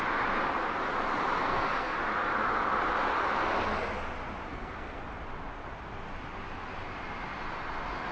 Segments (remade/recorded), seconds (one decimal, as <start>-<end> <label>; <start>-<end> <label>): 0.0-1.4 recorded; 1.4-2.0 remade; 2.0-4.5 recorded; 4.5-5.0 remade; 5.0-8.1 recorded